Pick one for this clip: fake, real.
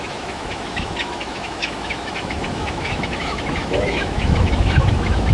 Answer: fake